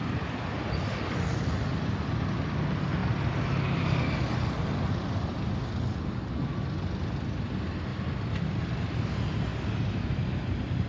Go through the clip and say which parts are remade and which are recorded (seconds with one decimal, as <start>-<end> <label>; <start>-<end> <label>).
0.0-7.9 recorded; 7.9-8.6 remade; 8.6-9.5 recorded; 9.5-10.2 remade; 10.2-10.9 recorded